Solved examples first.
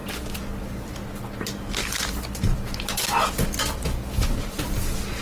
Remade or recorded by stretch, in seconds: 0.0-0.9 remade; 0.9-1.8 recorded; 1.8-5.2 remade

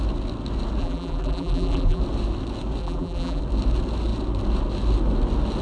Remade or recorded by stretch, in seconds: 0.0-0.8 recorded; 0.8-2.0 remade; 2.0-2.8 recorded; 2.8-3.4 remade; 3.4-5.6 recorded

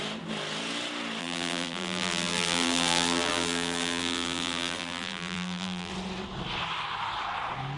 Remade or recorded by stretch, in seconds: 0.0-1.2 recorded; 1.2-5.9 remade; 5.9-7.8 recorded